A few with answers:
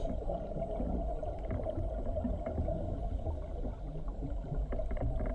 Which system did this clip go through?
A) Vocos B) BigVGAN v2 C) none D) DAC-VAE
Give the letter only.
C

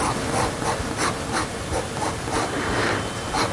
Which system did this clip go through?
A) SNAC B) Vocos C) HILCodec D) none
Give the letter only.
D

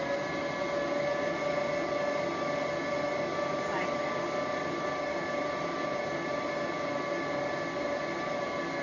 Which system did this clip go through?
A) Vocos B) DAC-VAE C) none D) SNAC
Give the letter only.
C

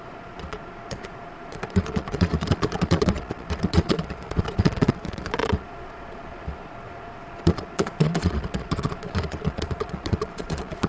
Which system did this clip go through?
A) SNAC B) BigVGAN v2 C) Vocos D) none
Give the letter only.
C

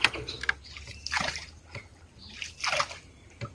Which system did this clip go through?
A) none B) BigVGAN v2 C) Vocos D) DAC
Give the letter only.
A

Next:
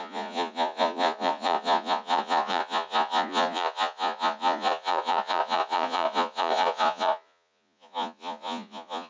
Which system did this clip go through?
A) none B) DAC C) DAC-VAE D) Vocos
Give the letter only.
D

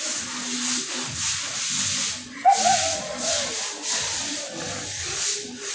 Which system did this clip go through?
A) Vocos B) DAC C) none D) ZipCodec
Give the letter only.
C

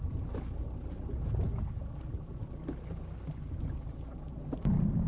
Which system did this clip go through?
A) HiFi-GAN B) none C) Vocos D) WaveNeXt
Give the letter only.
B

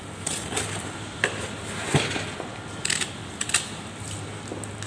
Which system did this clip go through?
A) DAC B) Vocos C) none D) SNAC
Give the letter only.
C